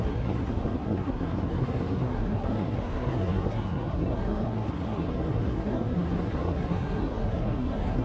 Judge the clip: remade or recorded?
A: remade